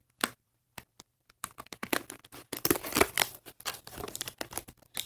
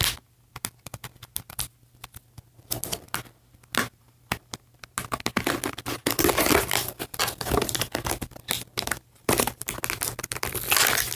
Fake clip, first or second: first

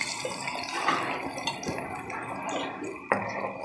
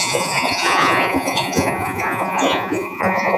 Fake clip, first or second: second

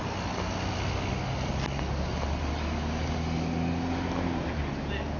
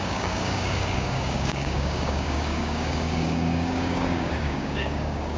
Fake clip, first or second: second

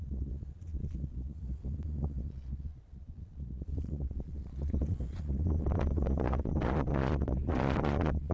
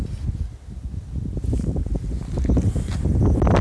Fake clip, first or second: first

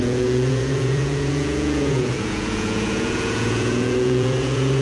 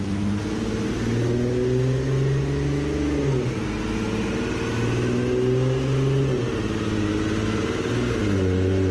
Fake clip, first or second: first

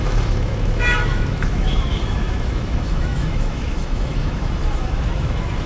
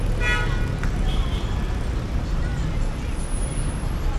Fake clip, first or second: first